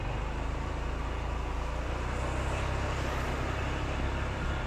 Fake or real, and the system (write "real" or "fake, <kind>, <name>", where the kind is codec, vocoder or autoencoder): real